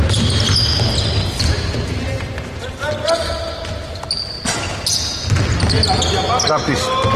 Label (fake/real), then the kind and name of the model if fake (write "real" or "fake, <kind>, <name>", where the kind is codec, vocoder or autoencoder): real